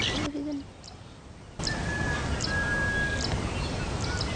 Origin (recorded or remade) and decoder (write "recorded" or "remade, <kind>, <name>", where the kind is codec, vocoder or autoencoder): recorded